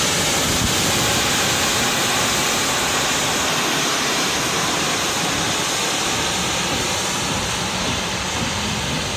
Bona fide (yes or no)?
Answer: yes